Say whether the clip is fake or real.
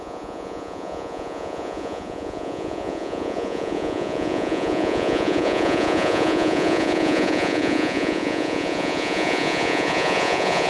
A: fake